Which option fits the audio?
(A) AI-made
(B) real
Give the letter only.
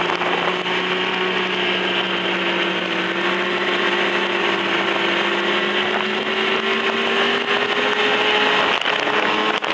B